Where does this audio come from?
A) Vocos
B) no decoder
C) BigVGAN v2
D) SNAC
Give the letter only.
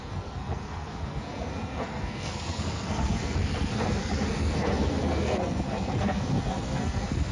D